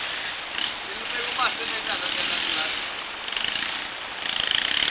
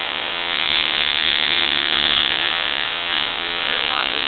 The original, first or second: first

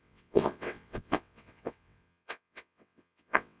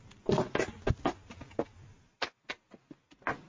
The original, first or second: second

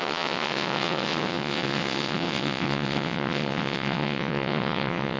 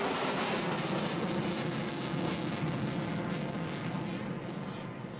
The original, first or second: second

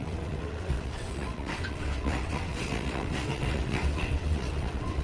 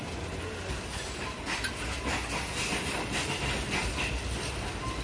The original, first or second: second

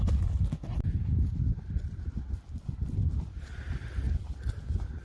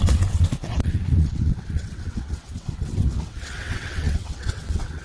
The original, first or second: first